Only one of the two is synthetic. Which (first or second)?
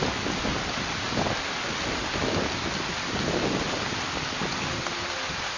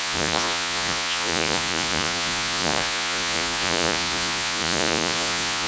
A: second